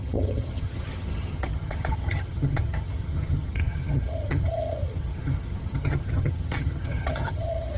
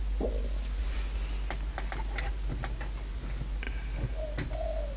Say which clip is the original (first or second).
second